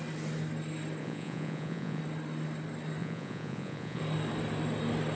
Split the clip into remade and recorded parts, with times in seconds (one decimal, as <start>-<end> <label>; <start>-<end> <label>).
0.0-1.0 recorded; 1.0-2.0 remade; 2.0-3.0 recorded; 3.0-4.0 remade; 4.0-5.1 recorded